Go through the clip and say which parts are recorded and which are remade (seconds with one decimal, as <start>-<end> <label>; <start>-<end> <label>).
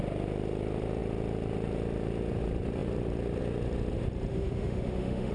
0.0-4.3 recorded; 4.3-5.3 remade